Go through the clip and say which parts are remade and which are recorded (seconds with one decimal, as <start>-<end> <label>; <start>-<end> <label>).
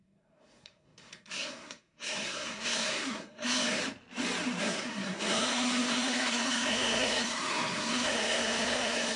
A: 0.0-3.8 remade; 3.8-4.6 recorded; 4.6-9.2 remade